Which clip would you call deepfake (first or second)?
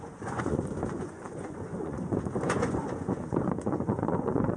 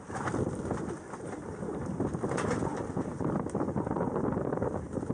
first